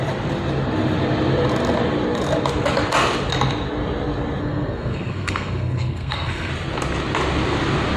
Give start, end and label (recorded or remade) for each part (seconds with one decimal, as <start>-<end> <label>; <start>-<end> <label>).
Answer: 0.0-4.4 recorded; 4.4-6.5 remade; 6.5-8.0 recorded